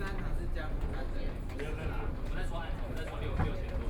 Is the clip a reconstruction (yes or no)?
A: no